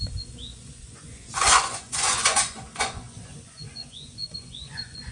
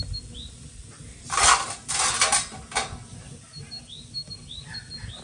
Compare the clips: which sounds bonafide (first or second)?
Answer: second